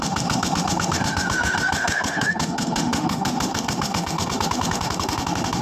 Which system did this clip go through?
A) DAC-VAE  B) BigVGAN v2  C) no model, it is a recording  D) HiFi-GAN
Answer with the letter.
A